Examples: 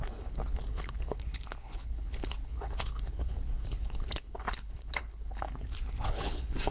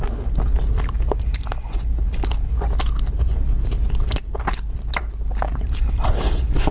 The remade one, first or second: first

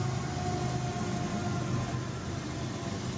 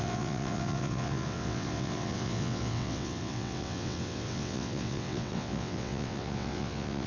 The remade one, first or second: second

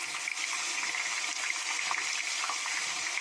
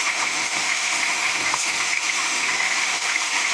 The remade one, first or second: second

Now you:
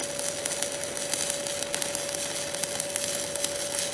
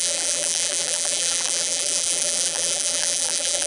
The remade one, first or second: second